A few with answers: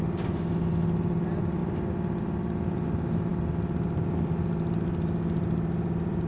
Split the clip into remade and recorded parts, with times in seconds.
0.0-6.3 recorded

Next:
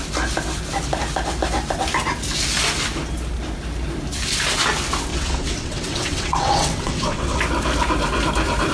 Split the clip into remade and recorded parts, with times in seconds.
0.0-5.1 recorded; 5.1-7.4 remade; 7.4-8.7 recorded

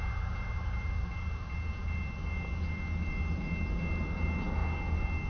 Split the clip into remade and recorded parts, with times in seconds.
0.0-5.3 recorded

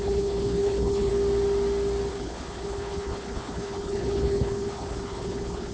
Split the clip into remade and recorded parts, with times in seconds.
0.0-1.1 remade; 1.1-2.1 recorded; 2.1-5.7 remade

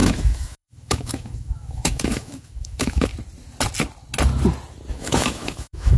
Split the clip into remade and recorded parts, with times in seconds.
0.0-3.1 remade; 3.1-4.9 recorded; 4.9-6.0 remade

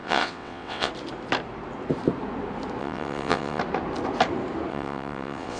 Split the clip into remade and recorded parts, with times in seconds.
0.0-0.9 remade; 0.9-2.8 recorded; 2.8-3.6 remade; 3.6-4.7 recorded; 4.7-5.6 remade